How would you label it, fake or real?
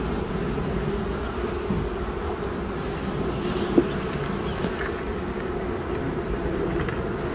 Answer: real